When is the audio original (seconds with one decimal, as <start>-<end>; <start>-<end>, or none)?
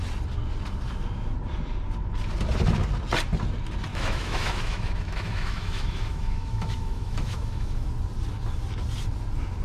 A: 0.0-3.9; 7.9-9.6